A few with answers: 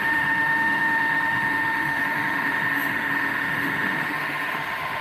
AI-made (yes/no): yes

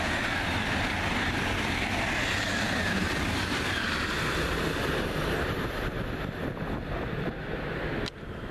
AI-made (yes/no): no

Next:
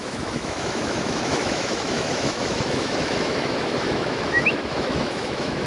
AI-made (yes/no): yes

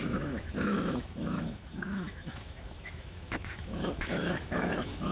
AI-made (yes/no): yes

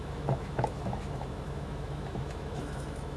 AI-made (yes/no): yes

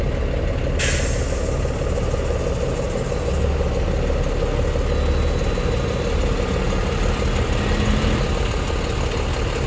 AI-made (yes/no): no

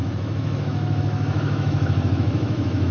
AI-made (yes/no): yes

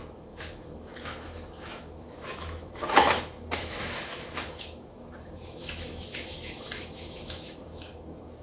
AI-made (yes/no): yes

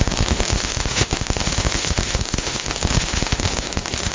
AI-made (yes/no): yes